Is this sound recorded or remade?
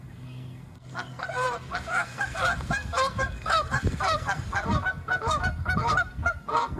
remade